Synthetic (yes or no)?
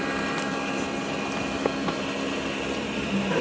no